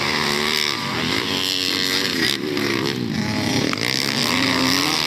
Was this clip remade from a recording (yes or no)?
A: yes